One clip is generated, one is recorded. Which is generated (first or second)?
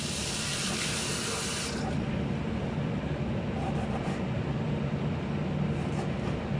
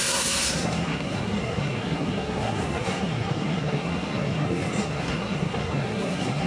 second